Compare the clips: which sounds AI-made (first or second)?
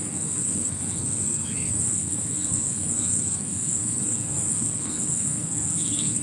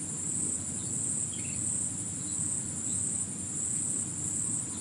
first